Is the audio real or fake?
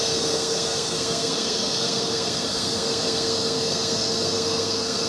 fake